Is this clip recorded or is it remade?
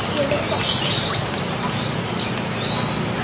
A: recorded